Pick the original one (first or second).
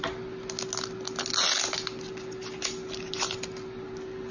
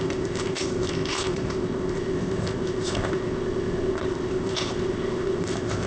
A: first